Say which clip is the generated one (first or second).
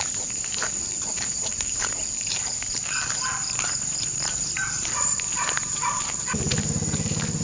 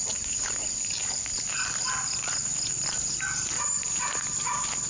first